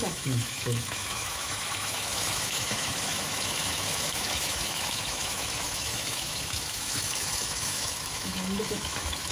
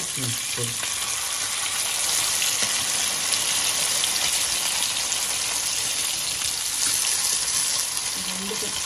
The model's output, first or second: first